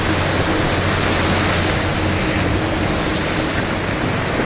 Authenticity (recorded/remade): recorded